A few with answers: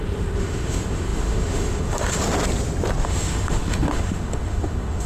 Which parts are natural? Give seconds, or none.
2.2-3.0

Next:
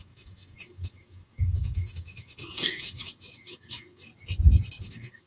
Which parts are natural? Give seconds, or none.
4.1-4.8